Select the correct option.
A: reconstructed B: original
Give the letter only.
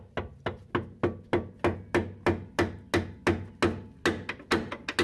B